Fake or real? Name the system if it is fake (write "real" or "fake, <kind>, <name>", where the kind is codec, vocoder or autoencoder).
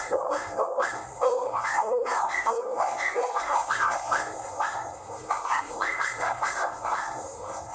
fake, codec, SNAC